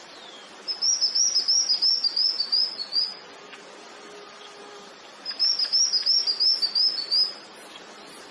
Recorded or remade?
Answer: recorded